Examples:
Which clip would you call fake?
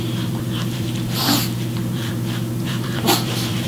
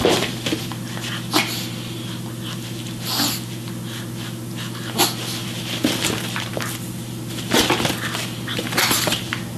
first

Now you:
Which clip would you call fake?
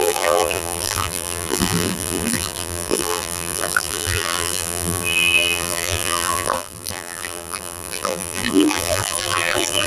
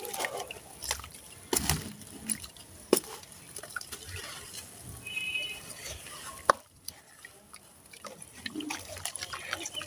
first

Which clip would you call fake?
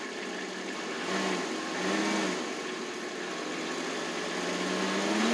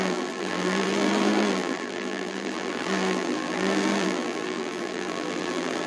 second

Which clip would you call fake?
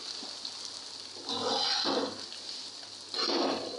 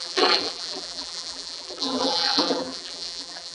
second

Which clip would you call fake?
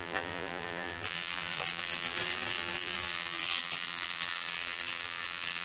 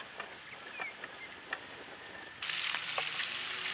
first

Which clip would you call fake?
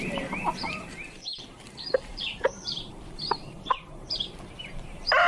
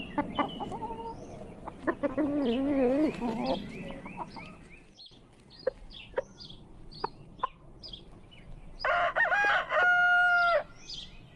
first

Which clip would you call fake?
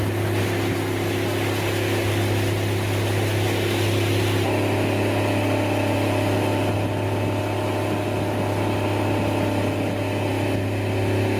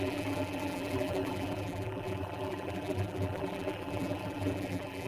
second